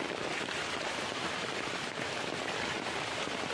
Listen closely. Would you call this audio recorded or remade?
remade